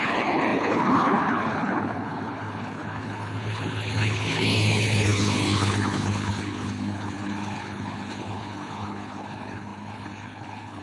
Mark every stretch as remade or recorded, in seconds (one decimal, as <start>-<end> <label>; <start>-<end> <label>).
0.0-10.8 remade